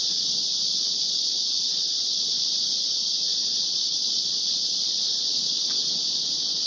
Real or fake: fake